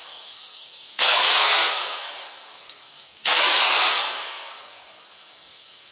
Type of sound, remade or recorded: remade